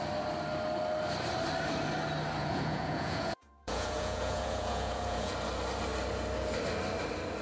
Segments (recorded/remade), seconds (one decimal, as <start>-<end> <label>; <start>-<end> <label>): 0.0-2.4 recorded; 2.4-5.3 remade; 5.3-7.4 recorded

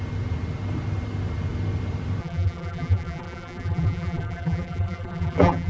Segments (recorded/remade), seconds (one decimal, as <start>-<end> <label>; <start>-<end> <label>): 0.0-2.2 recorded; 2.2-5.7 remade

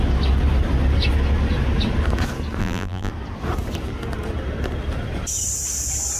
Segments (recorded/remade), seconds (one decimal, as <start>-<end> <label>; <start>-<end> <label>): 0.0-2.6 recorded; 2.6-3.1 remade; 3.1-6.2 recorded

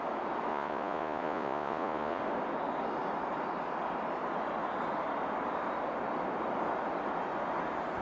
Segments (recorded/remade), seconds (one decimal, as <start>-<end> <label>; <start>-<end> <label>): 0.0-0.5 recorded; 0.5-2.2 remade; 2.2-8.0 recorded

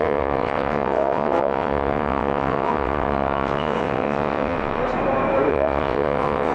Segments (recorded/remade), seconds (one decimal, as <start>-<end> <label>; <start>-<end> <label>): 0.0-4.8 remade; 4.8-5.5 recorded; 5.5-6.5 remade